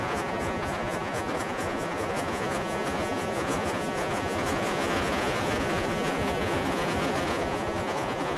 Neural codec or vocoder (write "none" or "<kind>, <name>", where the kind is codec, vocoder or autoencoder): vocoder, Vocos